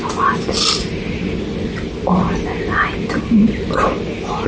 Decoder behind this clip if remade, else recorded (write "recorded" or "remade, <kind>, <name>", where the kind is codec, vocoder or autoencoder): recorded